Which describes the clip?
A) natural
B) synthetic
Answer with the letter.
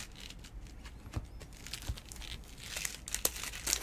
A